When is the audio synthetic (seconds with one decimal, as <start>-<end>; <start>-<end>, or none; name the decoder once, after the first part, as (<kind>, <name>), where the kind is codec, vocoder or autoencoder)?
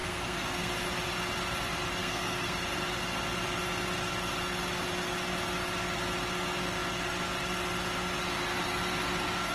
0.0-0.7 (codec, SNAC); 2.0-2.6